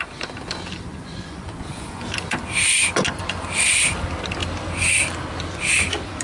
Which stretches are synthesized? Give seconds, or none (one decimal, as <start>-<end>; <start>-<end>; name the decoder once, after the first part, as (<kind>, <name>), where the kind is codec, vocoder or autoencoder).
0.9-2.1 (vocoder, Vocos)